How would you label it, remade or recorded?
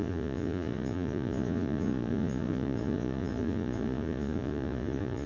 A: remade